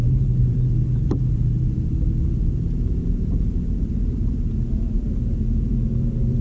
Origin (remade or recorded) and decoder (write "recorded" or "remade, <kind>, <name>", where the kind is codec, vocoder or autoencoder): remade, vocoder, BigVGAN v2